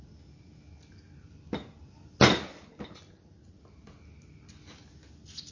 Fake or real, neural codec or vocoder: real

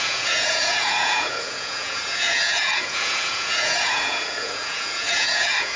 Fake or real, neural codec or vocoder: fake, vocoder, Vocos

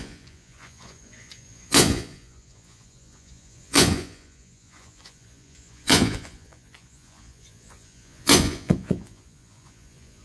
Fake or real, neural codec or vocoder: fake, vocoder, Vocos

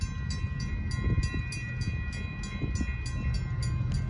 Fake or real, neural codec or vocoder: real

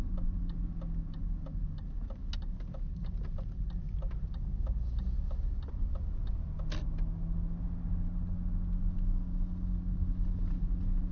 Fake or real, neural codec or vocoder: real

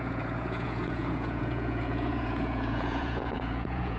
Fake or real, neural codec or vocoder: fake, vocoder, Vocos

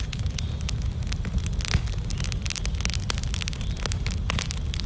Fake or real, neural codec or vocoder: real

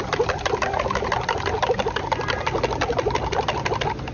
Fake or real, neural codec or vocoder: real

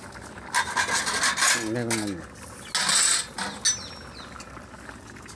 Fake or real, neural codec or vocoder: real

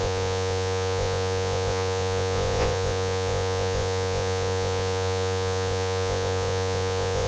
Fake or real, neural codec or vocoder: fake, vocoder, Vocos